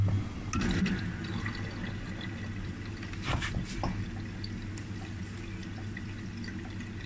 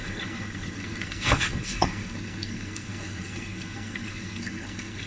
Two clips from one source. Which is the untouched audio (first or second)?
first